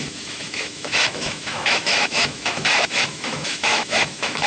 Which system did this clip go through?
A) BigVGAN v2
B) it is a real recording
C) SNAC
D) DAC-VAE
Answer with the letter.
D